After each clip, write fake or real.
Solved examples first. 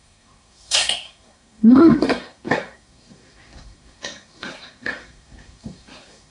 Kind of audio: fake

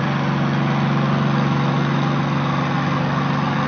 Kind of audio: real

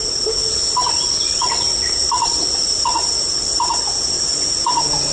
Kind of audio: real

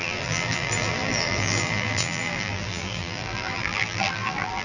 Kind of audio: fake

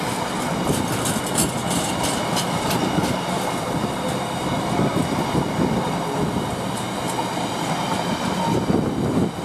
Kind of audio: real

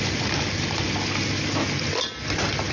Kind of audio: real